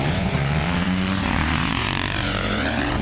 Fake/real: fake